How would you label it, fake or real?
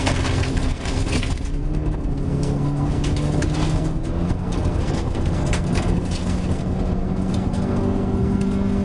fake